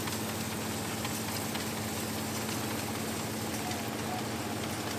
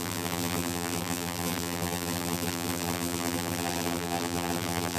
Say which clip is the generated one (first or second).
second